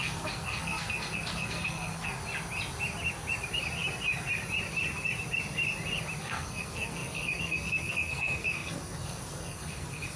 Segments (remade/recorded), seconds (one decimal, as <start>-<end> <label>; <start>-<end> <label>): 0.0-2.2 remade; 2.2-6.2 recorded; 6.2-10.2 remade